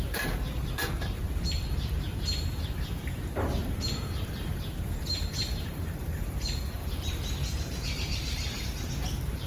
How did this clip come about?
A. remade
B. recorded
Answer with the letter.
A